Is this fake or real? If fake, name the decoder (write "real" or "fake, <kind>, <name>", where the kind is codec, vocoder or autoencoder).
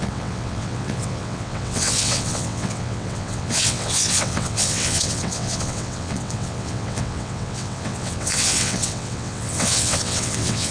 fake, vocoder, WaveNeXt